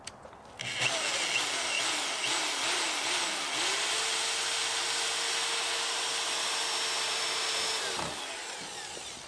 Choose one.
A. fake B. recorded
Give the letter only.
B